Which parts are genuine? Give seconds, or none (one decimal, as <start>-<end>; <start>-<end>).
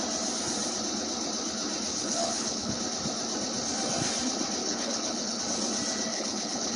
0.0-1.9; 2.8-4.6; 5.4-6.1